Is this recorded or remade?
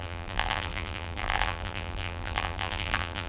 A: remade